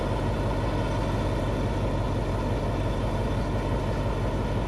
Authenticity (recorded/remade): recorded